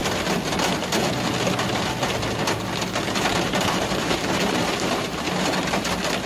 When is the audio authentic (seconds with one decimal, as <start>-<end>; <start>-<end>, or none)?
0.0-3.3; 5.5-6.3